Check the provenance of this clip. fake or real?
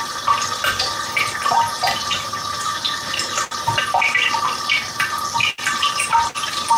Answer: fake